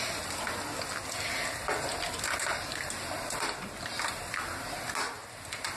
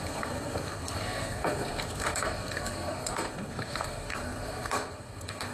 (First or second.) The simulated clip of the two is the second